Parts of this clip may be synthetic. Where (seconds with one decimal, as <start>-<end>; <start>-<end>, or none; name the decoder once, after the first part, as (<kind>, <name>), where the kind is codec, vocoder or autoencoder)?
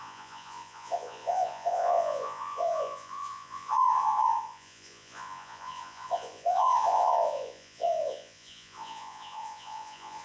0.0-10.2 (vocoder, Vocos)